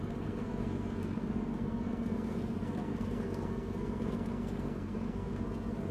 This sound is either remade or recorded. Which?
remade